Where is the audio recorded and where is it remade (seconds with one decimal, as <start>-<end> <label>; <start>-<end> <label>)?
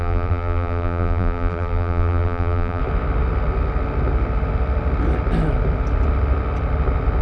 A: 0.0-2.8 remade; 2.8-7.2 recorded